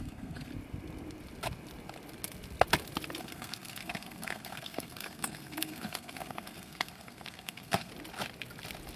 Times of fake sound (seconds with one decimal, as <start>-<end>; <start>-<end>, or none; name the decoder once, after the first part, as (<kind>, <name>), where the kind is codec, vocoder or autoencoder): 0.0-0.5 (codec, SNAC); 3.2-7.9